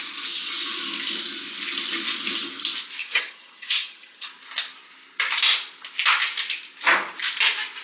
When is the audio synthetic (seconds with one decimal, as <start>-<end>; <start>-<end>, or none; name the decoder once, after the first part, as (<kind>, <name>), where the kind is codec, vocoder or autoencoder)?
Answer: 3.0-4.3 (vocoder, HiFi-GAN)